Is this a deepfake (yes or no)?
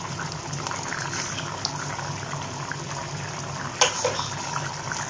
no